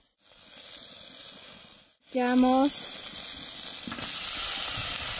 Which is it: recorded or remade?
recorded